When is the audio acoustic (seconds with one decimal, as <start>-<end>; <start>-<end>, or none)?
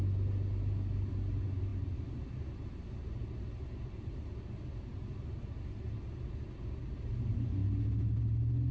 0.0-8.7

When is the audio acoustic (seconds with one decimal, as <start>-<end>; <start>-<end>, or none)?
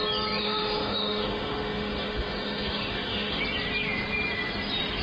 0.0-0.4; 3.4-5.0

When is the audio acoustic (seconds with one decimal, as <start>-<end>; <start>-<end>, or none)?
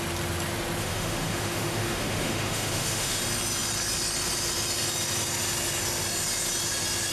0.0-0.8; 3.2-7.1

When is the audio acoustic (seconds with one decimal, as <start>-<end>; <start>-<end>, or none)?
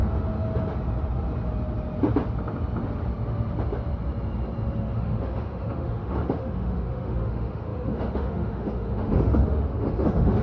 0.0-4.8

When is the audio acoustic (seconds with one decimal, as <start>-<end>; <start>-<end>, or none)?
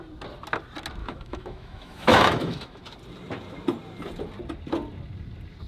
0.0-1.0; 2.8-5.7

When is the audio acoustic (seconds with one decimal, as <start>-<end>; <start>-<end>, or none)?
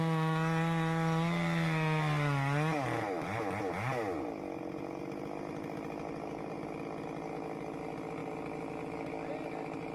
0.0-9.9